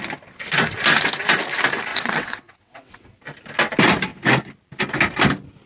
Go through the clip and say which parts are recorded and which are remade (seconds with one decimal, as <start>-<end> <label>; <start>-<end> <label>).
0.0-1.9 recorded; 1.9-3.2 remade; 3.2-5.7 recorded